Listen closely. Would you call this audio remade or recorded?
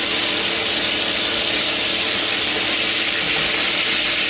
recorded